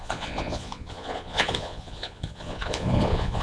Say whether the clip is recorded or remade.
remade